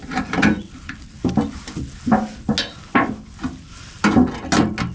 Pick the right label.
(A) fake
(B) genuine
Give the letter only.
B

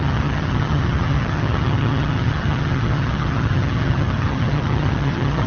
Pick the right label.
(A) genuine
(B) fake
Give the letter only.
B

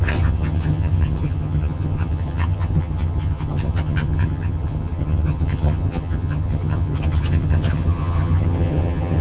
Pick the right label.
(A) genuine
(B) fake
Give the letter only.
B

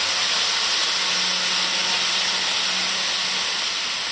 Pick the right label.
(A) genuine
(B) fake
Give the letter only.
A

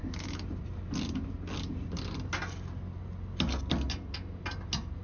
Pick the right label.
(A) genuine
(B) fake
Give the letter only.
A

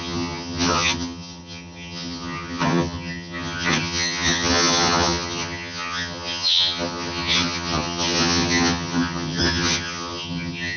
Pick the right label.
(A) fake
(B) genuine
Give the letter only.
A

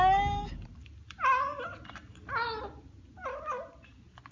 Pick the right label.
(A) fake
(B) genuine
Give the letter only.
B